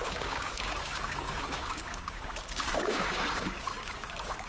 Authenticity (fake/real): fake